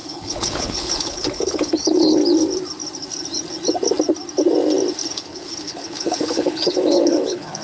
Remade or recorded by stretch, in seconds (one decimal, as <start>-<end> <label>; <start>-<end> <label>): 0.0-2.2 remade; 2.2-5.1 recorded; 5.1-7.6 remade